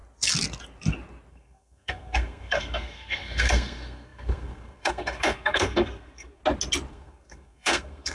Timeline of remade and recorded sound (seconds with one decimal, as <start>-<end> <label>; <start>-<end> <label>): 0.0-1.3 recorded; 1.3-6.4 remade; 6.4-6.9 recorded; 6.9-8.1 remade